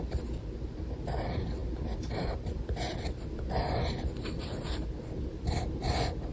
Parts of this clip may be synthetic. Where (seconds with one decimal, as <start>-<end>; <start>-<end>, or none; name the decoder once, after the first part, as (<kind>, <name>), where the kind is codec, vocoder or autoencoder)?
none